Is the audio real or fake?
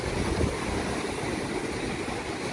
real